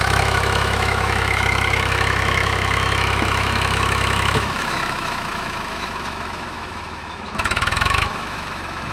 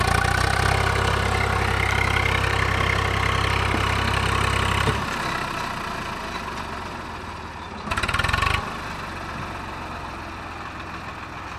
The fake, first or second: first